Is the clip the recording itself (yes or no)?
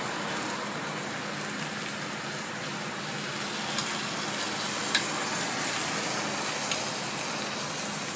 yes